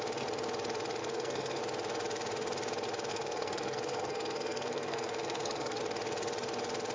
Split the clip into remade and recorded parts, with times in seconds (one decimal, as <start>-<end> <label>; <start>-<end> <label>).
0.0-1.0 recorded; 1.0-1.6 remade; 1.6-3.1 recorded; 3.1-5.8 remade; 5.8-6.9 recorded

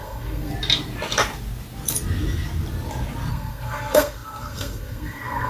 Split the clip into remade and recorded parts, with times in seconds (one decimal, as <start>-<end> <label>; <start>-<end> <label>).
0.0-0.5 remade; 0.5-3.3 recorded; 3.3-5.5 remade

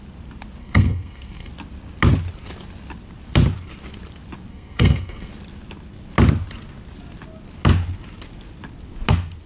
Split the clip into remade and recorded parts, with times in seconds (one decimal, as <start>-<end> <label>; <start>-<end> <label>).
0.0-0.6 recorded; 0.6-1.5 remade; 1.5-4.5 recorded; 4.5-5.3 remade; 5.3-9.5 recorded

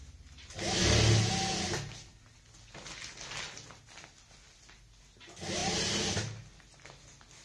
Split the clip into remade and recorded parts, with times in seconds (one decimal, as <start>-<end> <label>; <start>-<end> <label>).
0.0-7.4 recorded

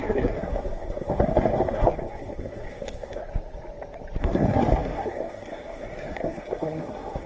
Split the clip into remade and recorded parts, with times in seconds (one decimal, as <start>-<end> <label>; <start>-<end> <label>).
0.0-3.2 remade; 3.2-4.2 recorded; 4.2-7.3 remade

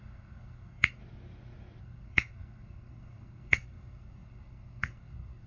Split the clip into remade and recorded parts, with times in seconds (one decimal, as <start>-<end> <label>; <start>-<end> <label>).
0.0-1.0 remade; 1.0-1.8 recorded; 1.8-5.5 remade